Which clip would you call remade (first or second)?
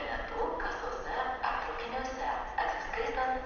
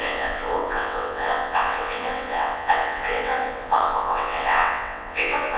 second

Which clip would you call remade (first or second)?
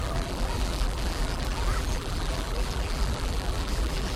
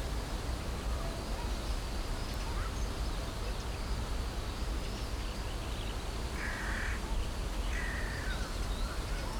first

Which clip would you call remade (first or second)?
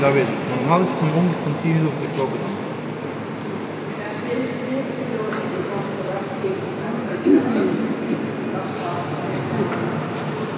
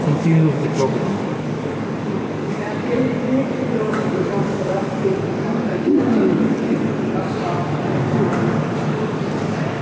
second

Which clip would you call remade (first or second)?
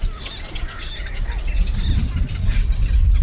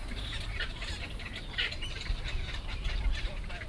second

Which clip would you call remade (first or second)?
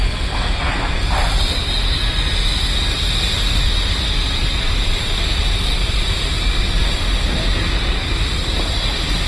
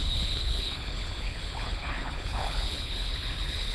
second